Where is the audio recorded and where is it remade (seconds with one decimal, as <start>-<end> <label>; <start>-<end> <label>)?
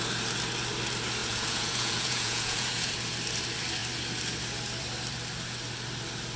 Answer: 0.0-1.2 recorded; 1.2-2.9 remade; 2.9-6.4 recorded